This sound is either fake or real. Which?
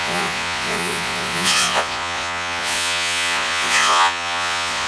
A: fake